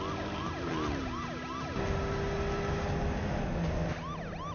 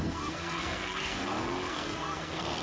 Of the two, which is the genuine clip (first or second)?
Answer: first